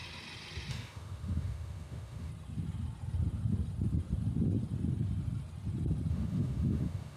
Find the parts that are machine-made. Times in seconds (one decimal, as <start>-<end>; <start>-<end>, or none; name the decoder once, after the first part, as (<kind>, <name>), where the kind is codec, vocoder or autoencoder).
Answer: 0.7-2.3 (autoencoder, DAC-VAE); 6.1-7.2